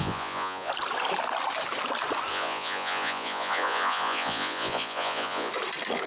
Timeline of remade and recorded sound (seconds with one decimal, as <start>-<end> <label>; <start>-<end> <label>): 0.0-0.7 remade; 0.7-2.3 recorded; 2.3-5.5 remade; 5.5-6.1 recorded